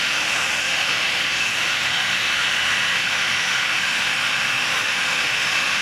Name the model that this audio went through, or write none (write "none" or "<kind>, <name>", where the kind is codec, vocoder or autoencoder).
autoencoder, DAC-VAE